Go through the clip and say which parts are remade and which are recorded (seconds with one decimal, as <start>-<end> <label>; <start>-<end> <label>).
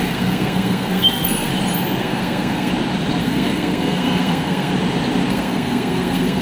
0.0-1.5 remade; 1.5-2.0 recorded; 2.0-2.7 remade; 2.7-3.2 recorded; 3.2-4.7 remade; 4.7-5.3 recorded; 5.3-6.4 remade